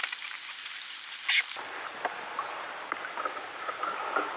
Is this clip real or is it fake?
real